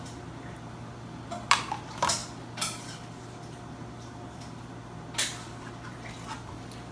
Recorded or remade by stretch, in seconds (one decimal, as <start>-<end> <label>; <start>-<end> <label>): 0.0-6.9 recorded